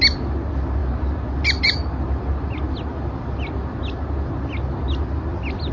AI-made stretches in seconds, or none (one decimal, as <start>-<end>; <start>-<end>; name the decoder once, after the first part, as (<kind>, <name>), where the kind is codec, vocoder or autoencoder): none